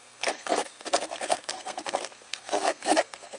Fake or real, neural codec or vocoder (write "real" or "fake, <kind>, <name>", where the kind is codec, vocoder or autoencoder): fake, codec, SNAC